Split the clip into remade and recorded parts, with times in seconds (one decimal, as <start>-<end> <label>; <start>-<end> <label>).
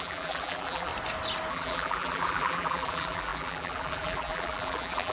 0.0-0.9 remade; 0.9-1.5 recorded; 1.5-5.1 remade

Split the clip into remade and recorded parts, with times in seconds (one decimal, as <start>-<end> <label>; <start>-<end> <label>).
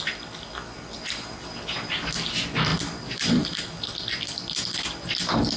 0.0-5.6 recorded